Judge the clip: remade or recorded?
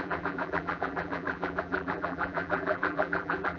remade